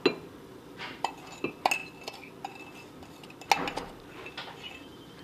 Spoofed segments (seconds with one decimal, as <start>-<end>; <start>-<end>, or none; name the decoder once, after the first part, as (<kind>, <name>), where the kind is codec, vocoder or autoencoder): none